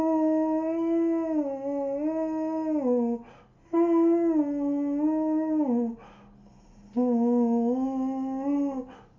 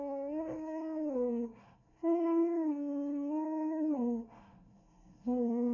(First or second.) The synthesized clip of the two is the second